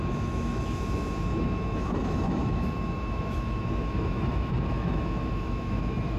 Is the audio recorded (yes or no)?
no